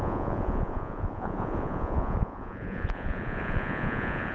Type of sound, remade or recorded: remade